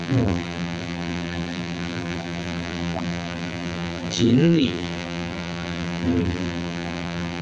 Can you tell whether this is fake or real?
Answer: fake